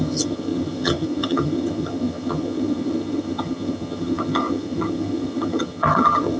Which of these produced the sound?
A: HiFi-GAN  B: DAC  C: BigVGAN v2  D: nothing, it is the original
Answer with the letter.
A